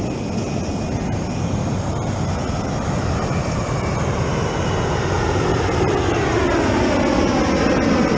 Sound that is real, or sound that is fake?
real